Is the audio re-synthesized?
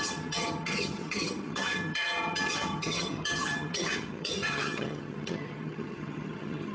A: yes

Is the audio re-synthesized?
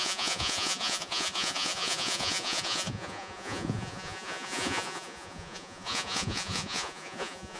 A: yes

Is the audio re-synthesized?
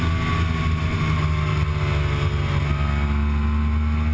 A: no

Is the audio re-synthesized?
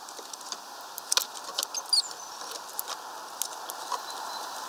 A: no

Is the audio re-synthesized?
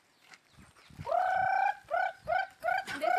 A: no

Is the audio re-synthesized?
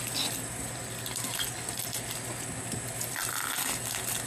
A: no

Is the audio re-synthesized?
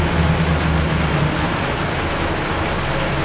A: no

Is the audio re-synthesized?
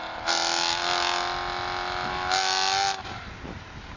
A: no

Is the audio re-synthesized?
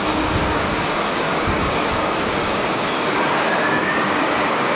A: yes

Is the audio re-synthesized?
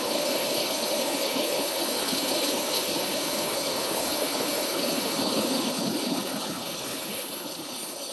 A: yes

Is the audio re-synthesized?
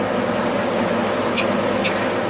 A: no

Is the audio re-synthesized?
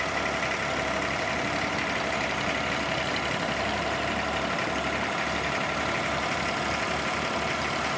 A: no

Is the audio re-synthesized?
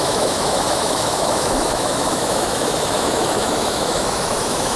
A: yes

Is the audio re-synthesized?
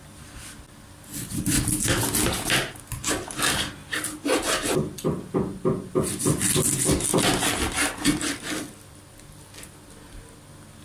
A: no